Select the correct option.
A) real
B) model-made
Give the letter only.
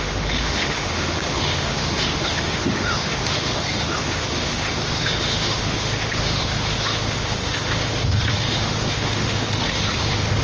B